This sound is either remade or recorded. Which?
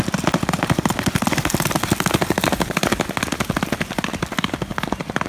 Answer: recorded